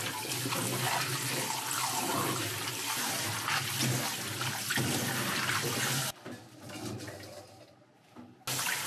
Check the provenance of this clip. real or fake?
real